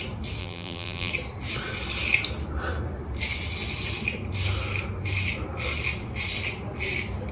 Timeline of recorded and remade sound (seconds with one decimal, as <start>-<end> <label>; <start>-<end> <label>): 0.0-0.4 recorded; 0.4-1.1 remade; 1.1-7.3 recorded